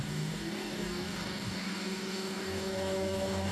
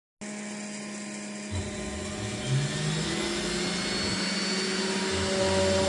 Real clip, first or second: second